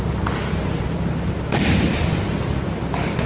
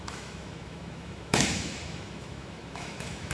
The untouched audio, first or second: first